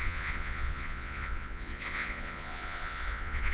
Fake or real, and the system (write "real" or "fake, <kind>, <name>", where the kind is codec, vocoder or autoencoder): fake, vocoder, Vocos